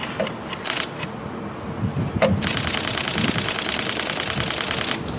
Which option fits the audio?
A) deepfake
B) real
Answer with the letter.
B